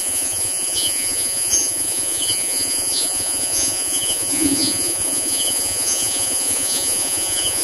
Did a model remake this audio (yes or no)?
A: yes